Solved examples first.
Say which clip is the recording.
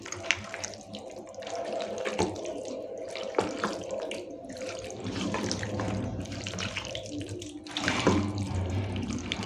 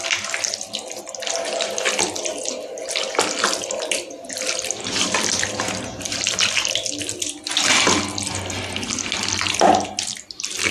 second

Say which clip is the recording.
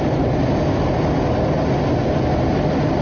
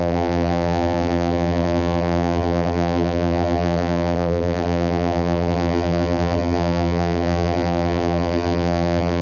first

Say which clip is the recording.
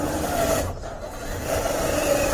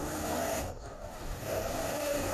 first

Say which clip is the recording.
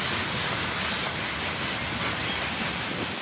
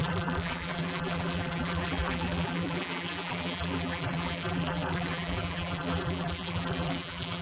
first